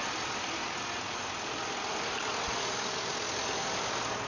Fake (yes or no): no